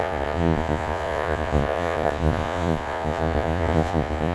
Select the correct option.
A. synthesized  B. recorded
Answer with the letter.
A